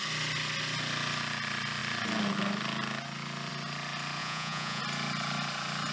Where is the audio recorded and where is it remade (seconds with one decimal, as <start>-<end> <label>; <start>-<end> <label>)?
0.0-4.2 recorded; 4.2-4.8 remade; 4.8-5.9 recorded